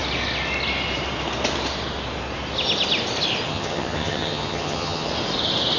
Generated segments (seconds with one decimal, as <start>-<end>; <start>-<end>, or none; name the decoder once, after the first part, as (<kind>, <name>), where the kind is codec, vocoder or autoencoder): 3.5-5.1 (vocoder, HiFi-GAN)